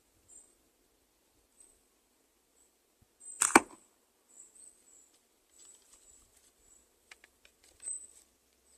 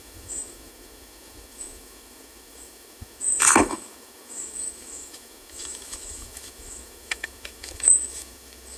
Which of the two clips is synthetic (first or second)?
second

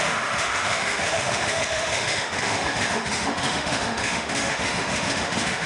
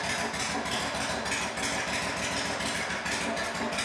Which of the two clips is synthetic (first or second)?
first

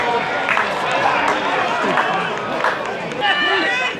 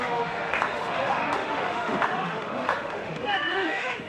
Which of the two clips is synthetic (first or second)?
second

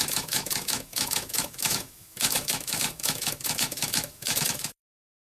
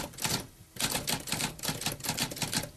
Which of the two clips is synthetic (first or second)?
first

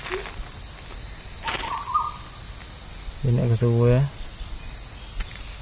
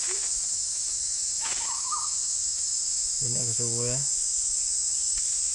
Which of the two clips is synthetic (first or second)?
second